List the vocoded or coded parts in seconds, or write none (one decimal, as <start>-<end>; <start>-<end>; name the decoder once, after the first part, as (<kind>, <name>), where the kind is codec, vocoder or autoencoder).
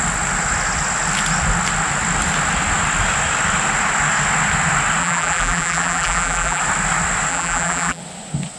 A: 5.0-6.6 (vocoder, BigVGAN v2); 7.3-8.0